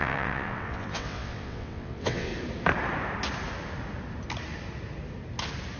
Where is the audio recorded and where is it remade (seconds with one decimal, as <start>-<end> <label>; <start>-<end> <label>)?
0.0-2.3 remade; 2.3-5.8 recorded